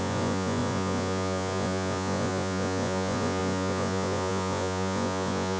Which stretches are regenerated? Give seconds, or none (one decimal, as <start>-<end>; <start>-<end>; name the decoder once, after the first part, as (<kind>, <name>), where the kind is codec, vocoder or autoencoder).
0.0-5.6 (vocoder, Vocos)